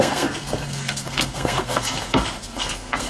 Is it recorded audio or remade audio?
remade